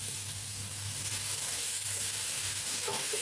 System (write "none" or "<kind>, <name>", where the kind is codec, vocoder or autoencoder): codec, DAC